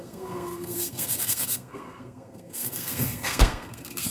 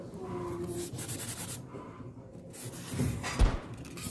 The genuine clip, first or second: second